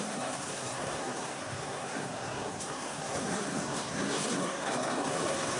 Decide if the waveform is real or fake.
fake